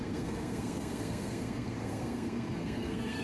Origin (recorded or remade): remade